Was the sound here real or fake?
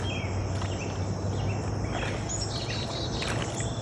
real